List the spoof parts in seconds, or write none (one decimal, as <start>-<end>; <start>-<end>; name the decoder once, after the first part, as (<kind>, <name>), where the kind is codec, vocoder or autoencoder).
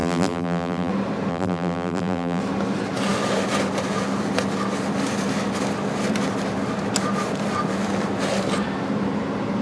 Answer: 0.0-0.9 (vocoder, BigVGAN v2); 1.3-2.4